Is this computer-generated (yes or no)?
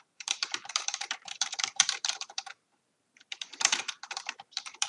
yes